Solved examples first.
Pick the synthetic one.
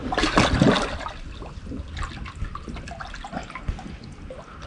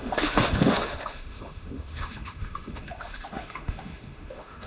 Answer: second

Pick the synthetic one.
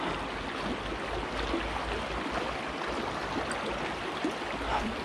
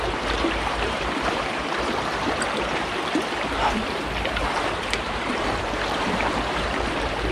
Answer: second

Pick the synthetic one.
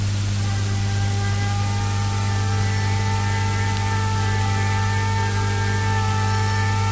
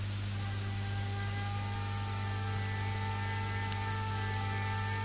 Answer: first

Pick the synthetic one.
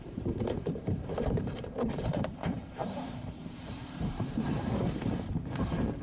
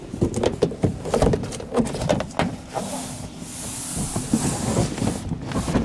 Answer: first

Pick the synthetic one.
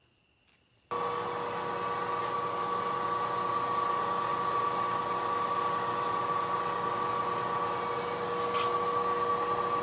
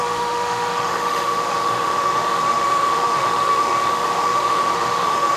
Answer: second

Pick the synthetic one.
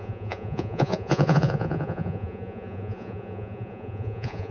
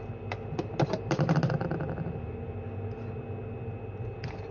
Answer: first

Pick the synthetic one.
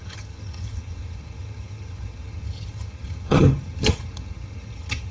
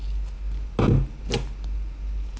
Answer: first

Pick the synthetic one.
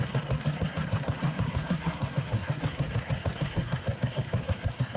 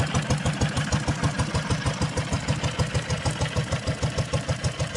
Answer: first